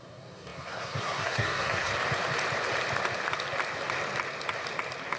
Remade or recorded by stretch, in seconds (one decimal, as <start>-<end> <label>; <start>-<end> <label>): 0.0-1.9 remade; 1.9-5.2 recorded

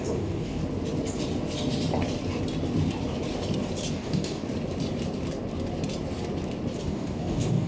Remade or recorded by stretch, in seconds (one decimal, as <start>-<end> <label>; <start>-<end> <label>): 0.0-0.6 remade; 0.6-3.9 recorded; 3.9-4.4 remade; 4.4-6.8 recorded; 6.8-7.7 remade

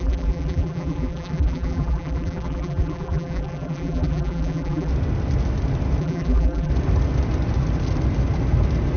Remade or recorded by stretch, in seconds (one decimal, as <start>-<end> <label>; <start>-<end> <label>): 0.0-4.9 remade; 4.9-6.0 recorded; 6.0-6.7 remade; 6.7-9.0 recorded